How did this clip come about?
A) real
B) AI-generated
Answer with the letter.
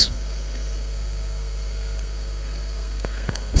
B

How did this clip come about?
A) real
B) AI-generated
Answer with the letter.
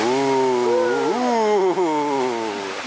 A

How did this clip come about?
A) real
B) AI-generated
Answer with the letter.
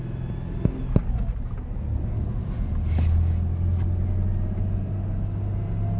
A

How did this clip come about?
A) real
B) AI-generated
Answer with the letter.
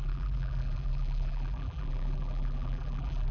B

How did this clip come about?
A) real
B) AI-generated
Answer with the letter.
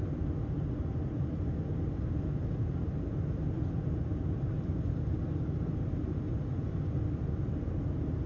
A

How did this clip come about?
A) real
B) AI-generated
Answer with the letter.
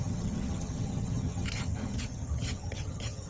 B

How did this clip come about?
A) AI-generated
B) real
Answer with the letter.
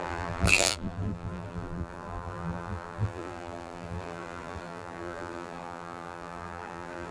A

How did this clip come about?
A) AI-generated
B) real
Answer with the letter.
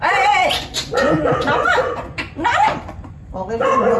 A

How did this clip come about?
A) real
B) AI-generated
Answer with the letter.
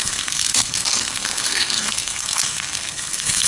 B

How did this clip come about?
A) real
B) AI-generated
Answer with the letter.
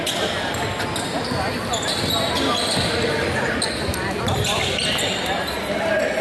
A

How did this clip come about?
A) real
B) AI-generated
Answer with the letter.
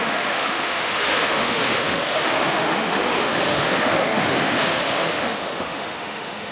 B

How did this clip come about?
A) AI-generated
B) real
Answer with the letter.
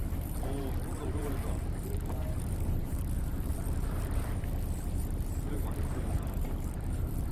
A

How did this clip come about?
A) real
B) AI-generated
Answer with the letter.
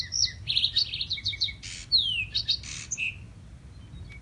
A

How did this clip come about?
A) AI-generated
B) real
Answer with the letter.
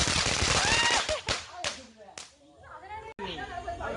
B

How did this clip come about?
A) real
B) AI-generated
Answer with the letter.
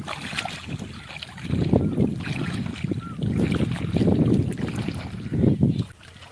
A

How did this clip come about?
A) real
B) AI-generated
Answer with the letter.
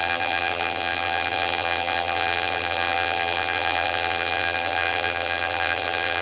B